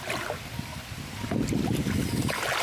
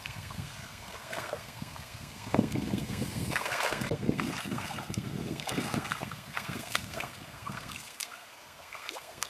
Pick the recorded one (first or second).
first